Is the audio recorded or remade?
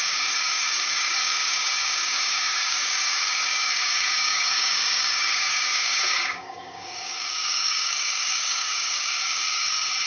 remade